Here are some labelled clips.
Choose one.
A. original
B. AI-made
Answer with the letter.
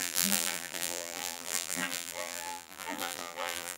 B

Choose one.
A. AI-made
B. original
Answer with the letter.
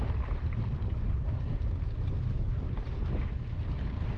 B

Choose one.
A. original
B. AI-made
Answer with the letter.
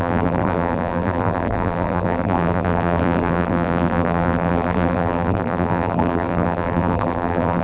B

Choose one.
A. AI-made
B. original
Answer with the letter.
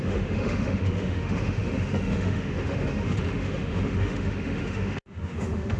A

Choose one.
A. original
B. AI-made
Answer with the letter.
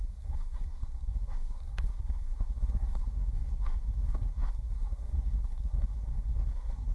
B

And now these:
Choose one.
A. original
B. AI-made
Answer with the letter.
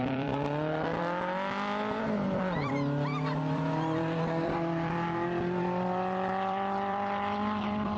B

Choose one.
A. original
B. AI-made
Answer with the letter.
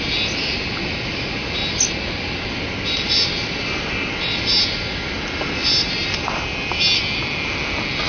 A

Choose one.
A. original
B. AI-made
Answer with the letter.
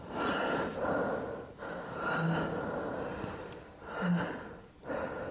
A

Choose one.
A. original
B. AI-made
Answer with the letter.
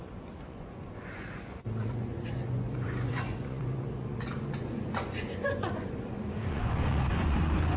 B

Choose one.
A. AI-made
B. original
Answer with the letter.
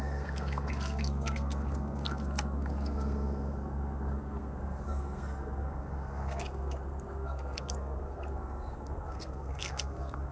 A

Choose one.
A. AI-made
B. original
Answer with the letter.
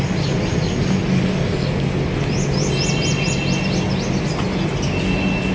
B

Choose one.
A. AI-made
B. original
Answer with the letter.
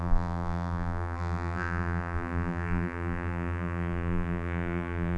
A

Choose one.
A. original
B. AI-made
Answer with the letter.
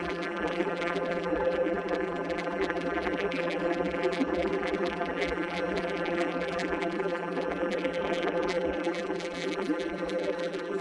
B